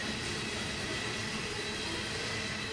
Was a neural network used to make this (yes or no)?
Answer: no